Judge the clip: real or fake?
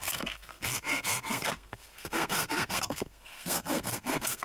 fake